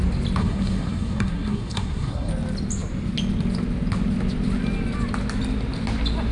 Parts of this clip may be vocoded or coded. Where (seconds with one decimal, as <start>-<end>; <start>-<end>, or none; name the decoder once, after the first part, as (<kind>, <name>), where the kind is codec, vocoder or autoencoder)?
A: 0.4-2.3 (codec, SNAC)